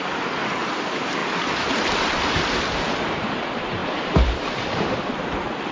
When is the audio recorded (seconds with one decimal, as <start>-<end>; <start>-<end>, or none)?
none